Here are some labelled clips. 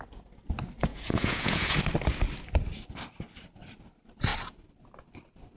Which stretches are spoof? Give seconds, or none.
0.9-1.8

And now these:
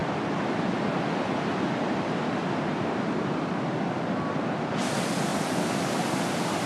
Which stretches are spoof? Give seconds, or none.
none